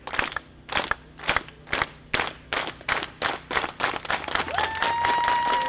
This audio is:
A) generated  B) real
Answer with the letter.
B